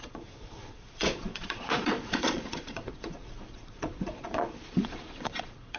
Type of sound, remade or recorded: remade